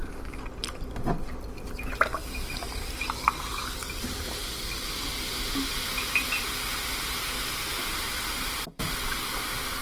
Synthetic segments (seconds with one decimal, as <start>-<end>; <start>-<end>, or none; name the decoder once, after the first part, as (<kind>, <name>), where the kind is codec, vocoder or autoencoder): 0.0-9.8 (vocoder, BigVGAN v2)